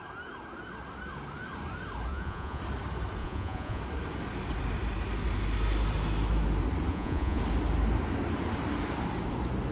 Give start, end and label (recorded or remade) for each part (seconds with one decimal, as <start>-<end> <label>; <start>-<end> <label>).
0.0-2.1 recorded; 2.1-2.6 remade; 2.6-3.2 recorded; 3.2-3.8 remade; 3.8-6.9 recorded; 6.9-7.4 remade; 7.4-9.7 recorded